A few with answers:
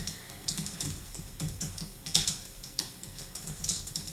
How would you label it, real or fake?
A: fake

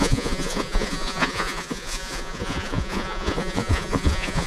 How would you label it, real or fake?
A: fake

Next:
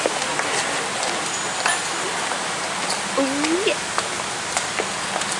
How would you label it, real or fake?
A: real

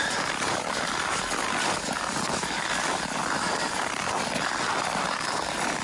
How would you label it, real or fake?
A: fake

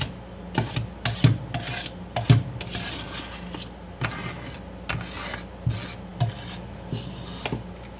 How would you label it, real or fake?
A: real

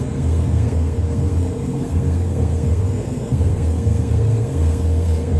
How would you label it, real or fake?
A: fake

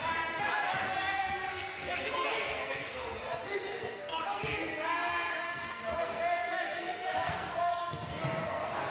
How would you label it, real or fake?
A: fake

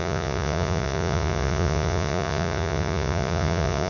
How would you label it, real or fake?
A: fake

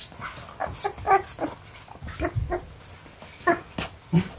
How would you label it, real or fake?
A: real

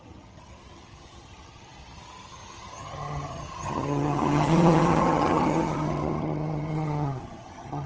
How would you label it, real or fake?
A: fake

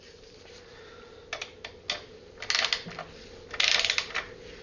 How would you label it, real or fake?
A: real